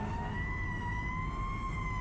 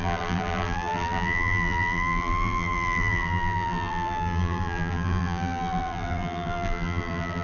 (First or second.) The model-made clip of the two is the second